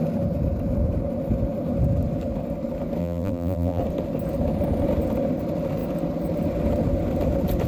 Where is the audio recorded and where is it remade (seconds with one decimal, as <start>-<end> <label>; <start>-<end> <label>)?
0.0-3.0 recorded; 3.0-3.8 remade; 3.8-7.7 recorded